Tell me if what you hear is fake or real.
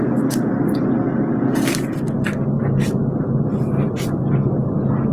real